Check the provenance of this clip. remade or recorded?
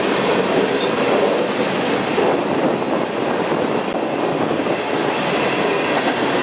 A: recorded